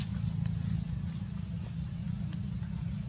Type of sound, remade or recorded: recorded